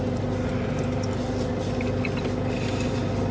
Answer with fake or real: real